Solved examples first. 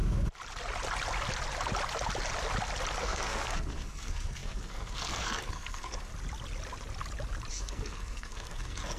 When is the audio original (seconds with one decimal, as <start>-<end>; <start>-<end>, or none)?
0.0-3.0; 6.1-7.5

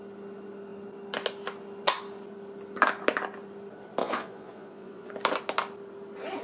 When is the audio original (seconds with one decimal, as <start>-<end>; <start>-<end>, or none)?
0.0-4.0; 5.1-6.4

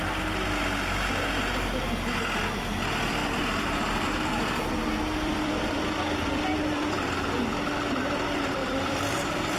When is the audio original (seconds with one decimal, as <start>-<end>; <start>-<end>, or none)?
0.0-3.2; 7.2-8.6